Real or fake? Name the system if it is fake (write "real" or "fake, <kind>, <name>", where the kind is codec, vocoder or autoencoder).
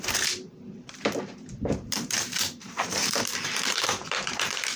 fake, vocoder, BigVGAN v2